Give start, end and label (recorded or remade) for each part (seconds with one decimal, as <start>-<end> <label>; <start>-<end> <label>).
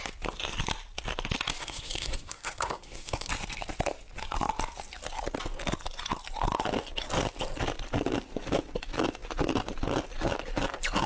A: 0.0-1.6 recorded; 1.6-3.3 remade; 3.3-11.1 recorded